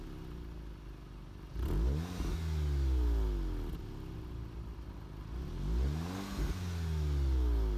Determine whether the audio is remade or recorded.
recorded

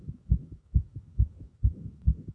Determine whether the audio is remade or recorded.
remade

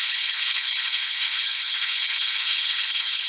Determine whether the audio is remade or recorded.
remade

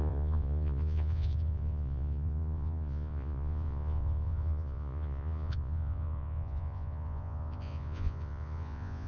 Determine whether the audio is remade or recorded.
remade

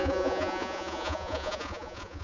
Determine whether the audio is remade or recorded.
remade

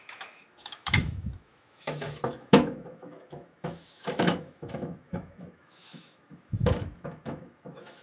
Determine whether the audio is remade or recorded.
remade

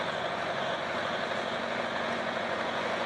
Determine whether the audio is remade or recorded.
remade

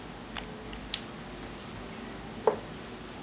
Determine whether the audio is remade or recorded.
recorded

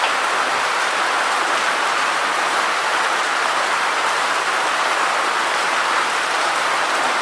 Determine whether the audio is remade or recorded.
recorded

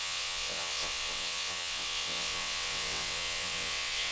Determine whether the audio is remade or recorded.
remade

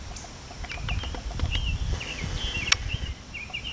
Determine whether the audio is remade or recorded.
recorded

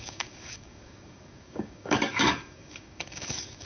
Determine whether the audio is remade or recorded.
remade